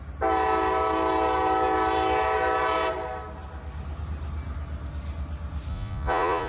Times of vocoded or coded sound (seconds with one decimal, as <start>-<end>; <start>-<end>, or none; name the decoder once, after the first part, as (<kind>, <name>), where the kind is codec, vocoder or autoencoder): 5.7-6.5 (vocoder, Vocos)